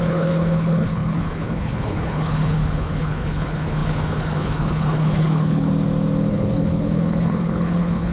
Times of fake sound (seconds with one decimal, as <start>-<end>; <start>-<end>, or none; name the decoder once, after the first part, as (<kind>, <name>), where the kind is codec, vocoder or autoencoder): 0.0-5.7 (codec, HILCodec); 6.3-8.1